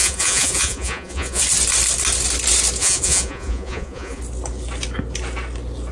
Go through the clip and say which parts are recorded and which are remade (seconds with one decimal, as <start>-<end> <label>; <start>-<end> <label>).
0.0-1.4 remade; 1.4-2.8 recorded; 2.8-4.2 remade; 4.2-5.9 recorded